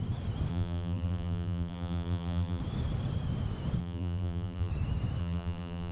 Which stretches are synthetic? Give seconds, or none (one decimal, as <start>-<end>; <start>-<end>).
0.5-2.6; 3.8-4.7; 5.2-5.9